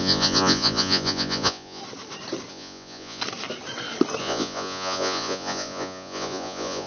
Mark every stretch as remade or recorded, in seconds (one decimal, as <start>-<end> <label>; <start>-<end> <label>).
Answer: 0.0-1.8 remade; 1.8-2.5 recorded; 2.5-3.2 remade; 3.2-4.2 recorded; 4.2-6.9 remade